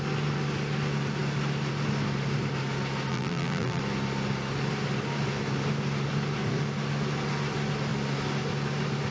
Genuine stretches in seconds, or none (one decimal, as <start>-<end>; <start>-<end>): 0.0-3.1; 3.8-9.1